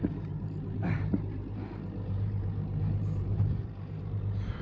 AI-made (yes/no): no